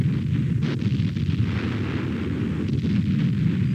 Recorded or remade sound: recorded